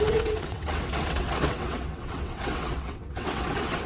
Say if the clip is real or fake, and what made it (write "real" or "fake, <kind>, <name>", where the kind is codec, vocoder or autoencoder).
fake, vocoder, WaveNeXt